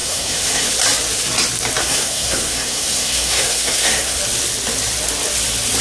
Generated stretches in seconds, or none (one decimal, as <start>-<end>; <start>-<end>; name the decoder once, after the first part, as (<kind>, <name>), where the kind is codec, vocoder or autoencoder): 0.0-0.7 (codec, SNAC); 1.8-4.2